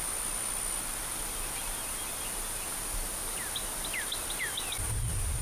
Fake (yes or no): no